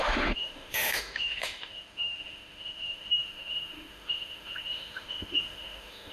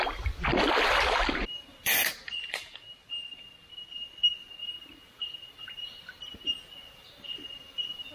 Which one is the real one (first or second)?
second